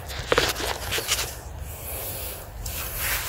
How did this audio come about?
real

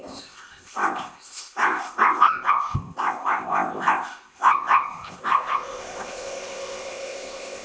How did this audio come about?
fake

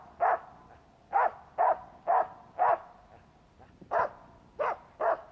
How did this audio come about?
real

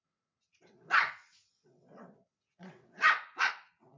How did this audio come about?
fake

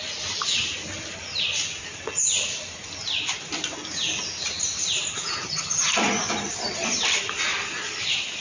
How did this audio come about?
real